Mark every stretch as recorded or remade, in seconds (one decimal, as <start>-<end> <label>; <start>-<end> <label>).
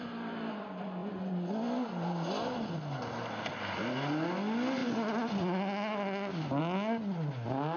0.0-7.8 recorded